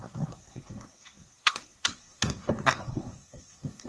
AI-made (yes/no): yes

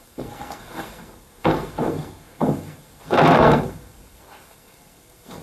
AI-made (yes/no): yes